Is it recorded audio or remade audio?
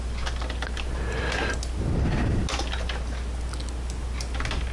recorded